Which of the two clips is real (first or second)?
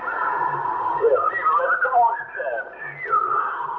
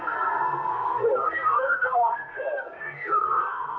first